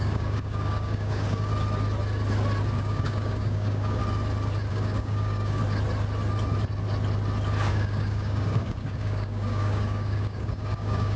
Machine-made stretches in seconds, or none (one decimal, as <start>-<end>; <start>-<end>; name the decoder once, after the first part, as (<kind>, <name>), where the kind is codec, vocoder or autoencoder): 0.0-1.5 (codec, DAC); 2.8-4.0; 4.7-5.6; 7.7-11.2